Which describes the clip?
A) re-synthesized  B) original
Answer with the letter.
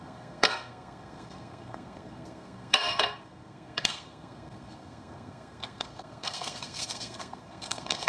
A